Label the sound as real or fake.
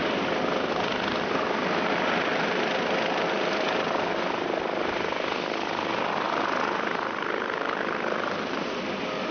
real